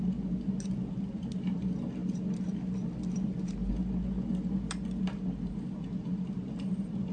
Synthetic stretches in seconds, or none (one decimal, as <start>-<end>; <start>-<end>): none